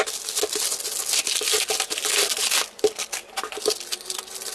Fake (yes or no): no